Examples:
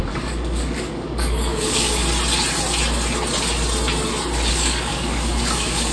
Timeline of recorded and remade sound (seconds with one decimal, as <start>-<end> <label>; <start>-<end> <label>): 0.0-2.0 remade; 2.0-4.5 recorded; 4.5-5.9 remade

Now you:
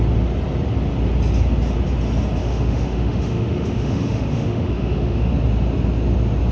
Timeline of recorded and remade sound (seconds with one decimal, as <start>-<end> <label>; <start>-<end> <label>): 0.0-2.4 recorded; 2.4-5.3 remade; 5.3-6.5 recorded

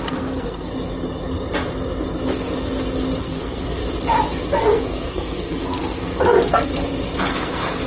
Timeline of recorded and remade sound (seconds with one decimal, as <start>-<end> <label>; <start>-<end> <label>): 0.0-0.7 remade; 0.7-3.2 recorded; 3.2-3.8 remade; 3.8-4.6 recorded; 4.6-6.7 remade; 6.7-7.2 recorded; 7.2-7.9 remade

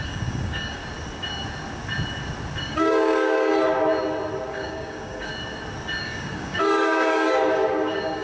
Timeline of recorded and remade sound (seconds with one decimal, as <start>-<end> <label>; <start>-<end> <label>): 0.0-0.8 remade; 0.8-2.6 recorded; 2.6-3.5 remade; 3.5-4.5 recorded; 4.5-5.3 remade; 5.3-6.0 recorded; 6.0-8.2 remade

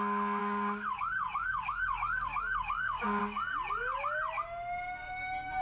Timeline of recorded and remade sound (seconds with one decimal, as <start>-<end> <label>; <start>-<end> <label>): 0.0-0.4 recorded; 0.4-3.2 remade; 3.2-5.6 recorded

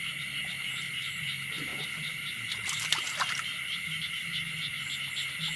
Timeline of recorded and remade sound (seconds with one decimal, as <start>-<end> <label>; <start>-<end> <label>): 0.0-5.6 recorded